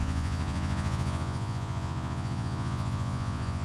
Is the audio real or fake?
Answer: fake